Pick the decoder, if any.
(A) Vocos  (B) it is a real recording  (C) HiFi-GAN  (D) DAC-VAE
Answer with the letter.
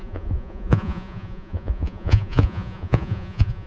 A